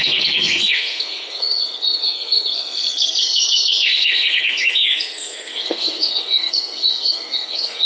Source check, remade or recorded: remade